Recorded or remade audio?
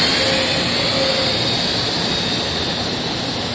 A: recorded